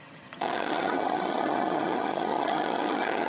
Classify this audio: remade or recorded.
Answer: remade